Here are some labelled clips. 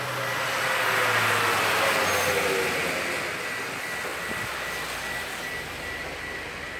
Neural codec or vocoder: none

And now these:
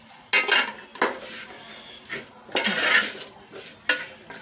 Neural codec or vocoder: none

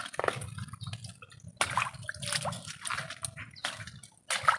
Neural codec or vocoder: none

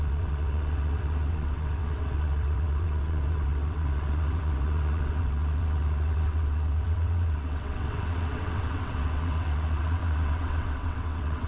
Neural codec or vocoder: vocoder, WaveNeXt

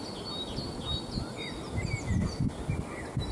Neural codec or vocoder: none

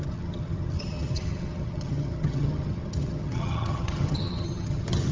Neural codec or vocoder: vocoder, HiFi-GAN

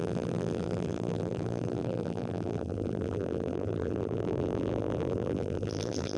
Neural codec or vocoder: vocoder, BigVGAN v2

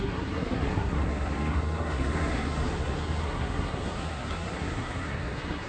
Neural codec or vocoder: codec, SNAC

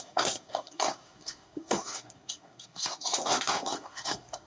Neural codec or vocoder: codec, SNAC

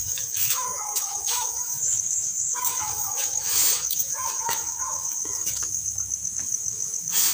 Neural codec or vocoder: autoencoder, DAC-VAE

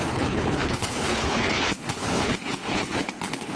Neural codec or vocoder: codec, HILCodec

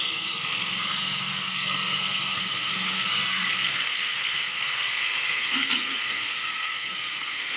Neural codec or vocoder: codec, SNAC